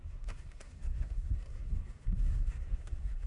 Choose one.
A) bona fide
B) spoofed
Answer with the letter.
B